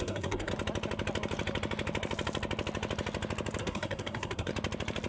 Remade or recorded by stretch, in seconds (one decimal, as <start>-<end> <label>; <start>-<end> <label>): 0.0-0.5 remade; 0.5-3.6 recorded; 3.6-4.5 remade; 4.5-5.1 recorded